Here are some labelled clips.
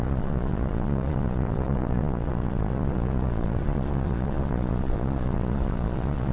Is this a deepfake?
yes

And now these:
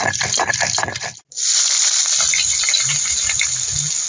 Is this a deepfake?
no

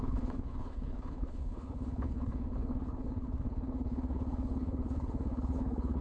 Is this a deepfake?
yes